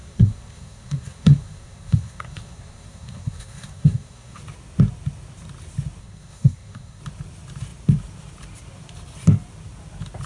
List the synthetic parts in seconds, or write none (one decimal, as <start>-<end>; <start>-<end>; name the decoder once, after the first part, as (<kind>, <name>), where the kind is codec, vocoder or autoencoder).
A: 0.0-4.4 (codec, SNAC); 6.0-7.0